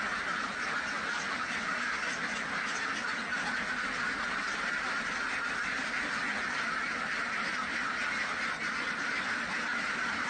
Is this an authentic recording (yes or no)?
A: yes